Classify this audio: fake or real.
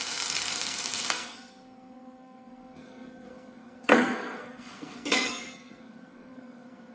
fake